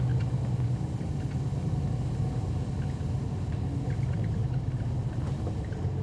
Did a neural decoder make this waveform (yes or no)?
no